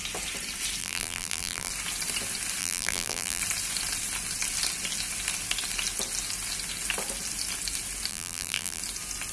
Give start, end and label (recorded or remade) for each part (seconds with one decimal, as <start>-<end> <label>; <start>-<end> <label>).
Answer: 0.0-0.8 recorded; 0.8-1.7 remade; 1.7-2.6 recorded; 2.6-3.4 remade; 3.4-8.1 recorded; 8.1-8.8 remade; 8.8-9.3 recorded